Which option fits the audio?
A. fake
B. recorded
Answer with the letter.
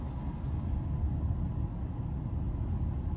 B